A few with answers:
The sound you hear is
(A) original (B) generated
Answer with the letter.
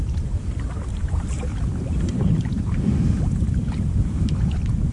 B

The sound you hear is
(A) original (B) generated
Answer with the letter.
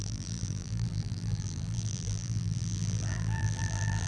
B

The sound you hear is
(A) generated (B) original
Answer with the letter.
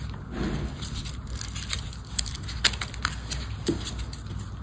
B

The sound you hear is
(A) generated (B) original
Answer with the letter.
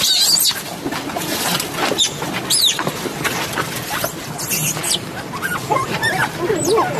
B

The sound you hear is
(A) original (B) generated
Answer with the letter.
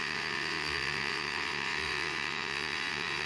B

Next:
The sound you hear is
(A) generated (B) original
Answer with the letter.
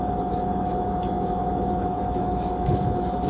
A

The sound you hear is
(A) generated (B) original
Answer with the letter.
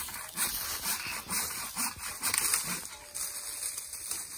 B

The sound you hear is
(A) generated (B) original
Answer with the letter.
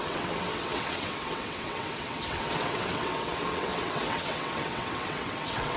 A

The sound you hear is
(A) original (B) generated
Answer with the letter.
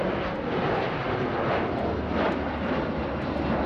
A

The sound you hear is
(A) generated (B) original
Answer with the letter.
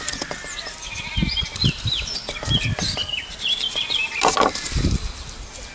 B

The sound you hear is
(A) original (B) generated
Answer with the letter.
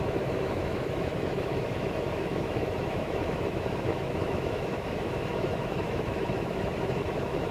B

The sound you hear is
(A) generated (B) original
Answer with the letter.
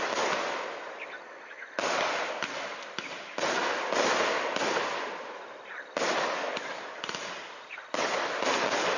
B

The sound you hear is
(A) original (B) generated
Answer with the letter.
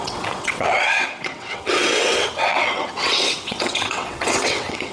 B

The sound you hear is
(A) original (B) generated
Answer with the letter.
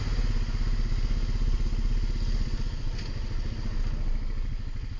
A